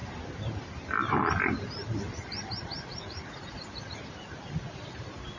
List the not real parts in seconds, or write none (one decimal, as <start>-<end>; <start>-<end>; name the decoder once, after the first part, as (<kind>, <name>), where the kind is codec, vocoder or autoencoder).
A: 2.9-3.5 (vocoder, Vocos)